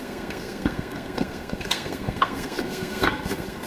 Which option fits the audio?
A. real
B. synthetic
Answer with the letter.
B